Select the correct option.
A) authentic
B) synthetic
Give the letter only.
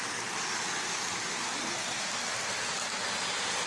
A